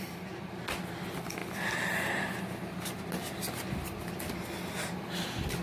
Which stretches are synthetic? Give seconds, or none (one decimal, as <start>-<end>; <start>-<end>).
none